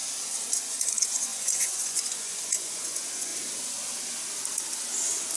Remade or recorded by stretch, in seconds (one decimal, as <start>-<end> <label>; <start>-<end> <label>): 0.0-0.5 recorded; 0.5-3.3 remade; 3.3-5.4 recorded